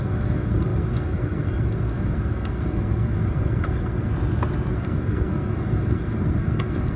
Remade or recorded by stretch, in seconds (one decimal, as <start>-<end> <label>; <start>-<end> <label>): 0.0-4.1 remade; 4.1-4.7 recorded; 4.7-7.0 remade